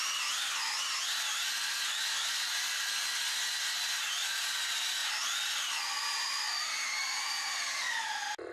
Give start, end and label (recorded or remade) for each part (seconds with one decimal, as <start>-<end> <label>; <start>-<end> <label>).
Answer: 0.0-8.5 recorded